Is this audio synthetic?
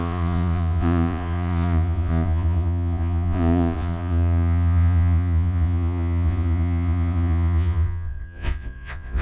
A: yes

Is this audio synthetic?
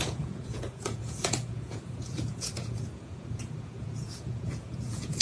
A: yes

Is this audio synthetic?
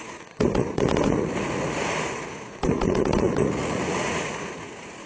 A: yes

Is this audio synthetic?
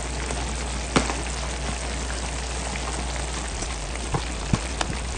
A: no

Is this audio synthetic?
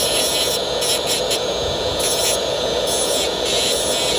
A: yes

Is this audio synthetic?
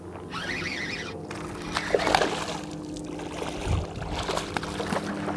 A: no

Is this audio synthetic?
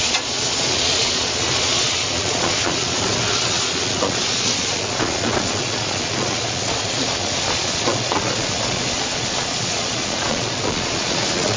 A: yes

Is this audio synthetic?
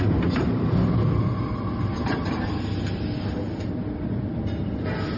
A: no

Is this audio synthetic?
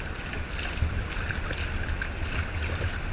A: no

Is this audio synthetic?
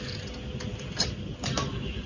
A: no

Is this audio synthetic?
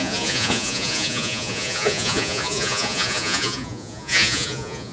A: yes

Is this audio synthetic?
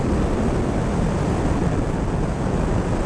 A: no